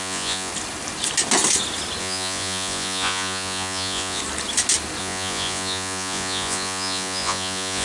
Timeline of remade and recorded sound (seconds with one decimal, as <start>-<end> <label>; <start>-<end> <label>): 0.0-0.5 remade; 0.5-2.0 recorded; 2.0-4.2 remade; 4.2-5.0 recorded; 5.0-7.8 remade